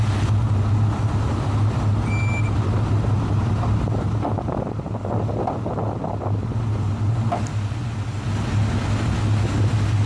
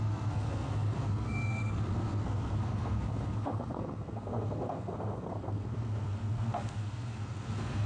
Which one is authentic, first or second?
first